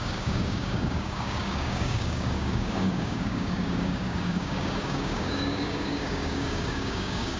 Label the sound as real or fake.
fake